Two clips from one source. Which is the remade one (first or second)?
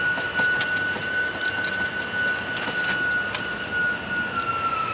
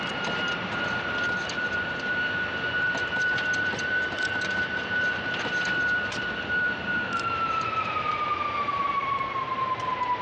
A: second